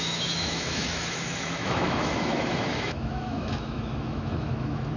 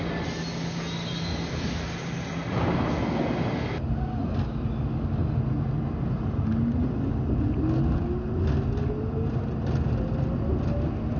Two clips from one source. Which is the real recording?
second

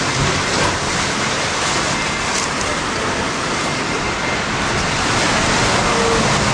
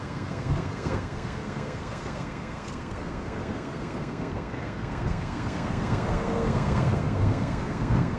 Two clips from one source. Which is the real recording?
first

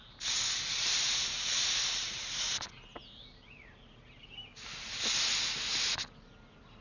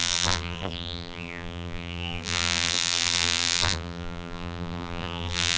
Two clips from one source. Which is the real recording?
first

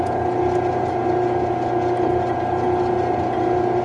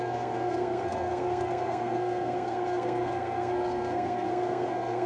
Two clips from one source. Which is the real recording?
first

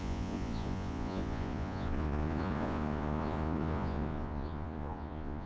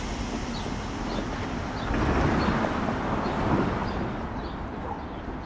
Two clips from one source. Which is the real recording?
second